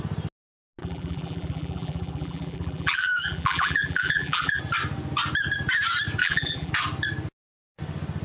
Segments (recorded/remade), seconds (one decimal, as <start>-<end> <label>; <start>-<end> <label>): 0.0-0.8 recorded; 0.8-4.6 remade; 4.6-6.2 recorded; 6.2-6.7 remade; 6.7-8.2 recorded